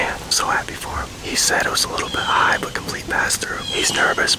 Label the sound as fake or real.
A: real